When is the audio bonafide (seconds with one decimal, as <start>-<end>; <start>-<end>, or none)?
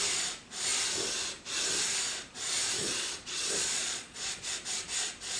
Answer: 0.0-2.8; 4.5-5.4